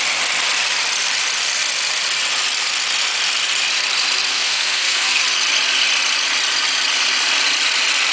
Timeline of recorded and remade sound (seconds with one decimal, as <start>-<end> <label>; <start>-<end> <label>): 0.0-4.3 recorded; 4.3-5.2 remade; 5.2-8.1 recorded